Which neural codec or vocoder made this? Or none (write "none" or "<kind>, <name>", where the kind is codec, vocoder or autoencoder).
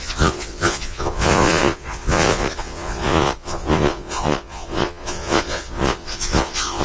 vocoder, Vocos